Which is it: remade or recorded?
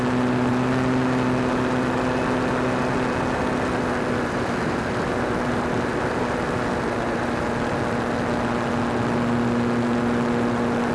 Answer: recorded